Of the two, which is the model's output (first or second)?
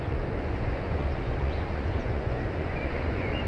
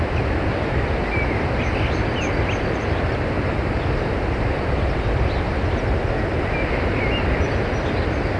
first